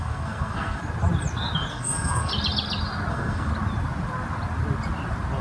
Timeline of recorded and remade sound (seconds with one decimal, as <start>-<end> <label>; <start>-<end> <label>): 0.0-0.8 remade; 0.8-1.7 recorded; 1.7-2.3 remade; 2.3-3.1 recorded; 3.1-3.5 remade; 3.5-5.4 recorded